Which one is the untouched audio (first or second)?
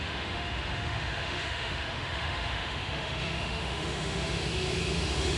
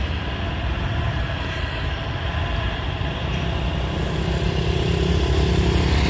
second